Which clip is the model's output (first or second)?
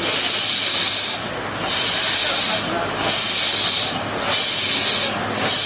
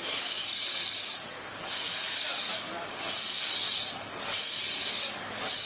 second